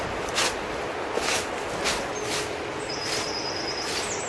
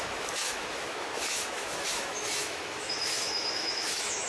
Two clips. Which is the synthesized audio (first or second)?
second